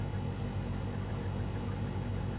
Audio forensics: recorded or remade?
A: recorded